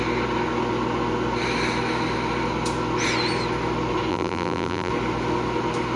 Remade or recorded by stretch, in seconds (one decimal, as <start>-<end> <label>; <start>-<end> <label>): 0.0-4.1 recorded; 4.1-4.9 remade; 4.9-6.0 recorded